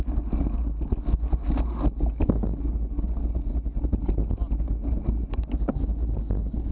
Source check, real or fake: real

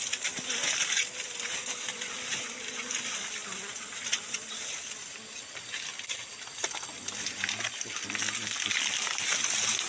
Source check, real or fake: real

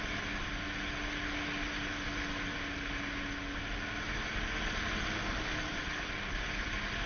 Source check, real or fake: real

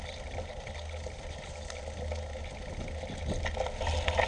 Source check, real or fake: real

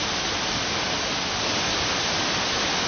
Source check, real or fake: real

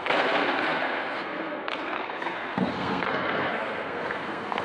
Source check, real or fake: fake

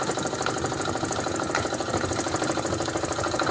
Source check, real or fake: real